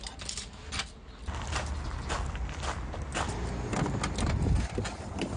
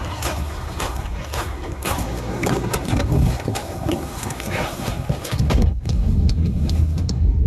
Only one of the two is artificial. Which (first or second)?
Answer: second